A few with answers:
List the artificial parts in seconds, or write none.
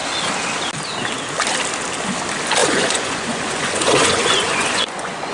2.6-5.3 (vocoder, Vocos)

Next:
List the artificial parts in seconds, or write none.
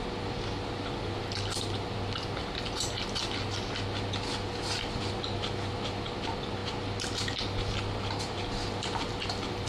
none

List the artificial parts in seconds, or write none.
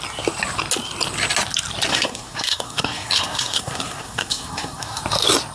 1.9-5.0 (codec, SNAC)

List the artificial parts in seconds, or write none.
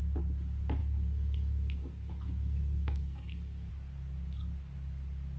0.8-3.7 (codec, SNAC)